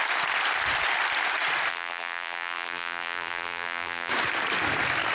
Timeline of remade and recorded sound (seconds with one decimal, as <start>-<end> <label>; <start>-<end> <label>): 0.0-1.7 recorded; 1.7-4.1 remade; 4.1-5.1 recorded